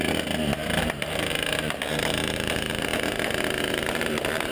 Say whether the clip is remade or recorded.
remade